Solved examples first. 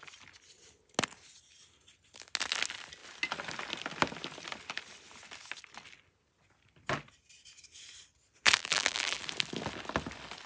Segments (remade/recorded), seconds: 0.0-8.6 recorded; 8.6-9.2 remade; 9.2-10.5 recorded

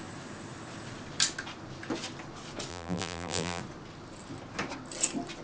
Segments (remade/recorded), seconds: 0.0-2.7 recorded; 2.7-3.6 remade; 3.6-5.4 recorded

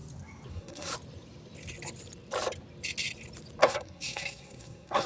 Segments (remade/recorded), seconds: 0.0-0.5 recorded; 0.5-0.9 remade; 0.9-3.6 recorded; 3.6-5.1 remade

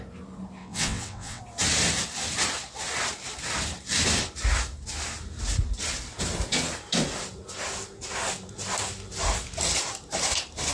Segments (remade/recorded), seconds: 0.0-0.6 recorded; 0.6-1.4 remade; 1.4-10.7 recorded

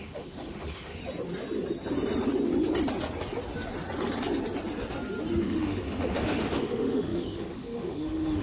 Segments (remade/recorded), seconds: 0.0-1.0 remade; 1.0-5.4 recorded; 5.4-8.4 remade

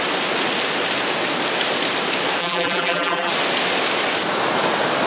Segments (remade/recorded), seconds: 0.0-2.4 recorded; 2.4-3.3 remade; 3.3-5.1 recorded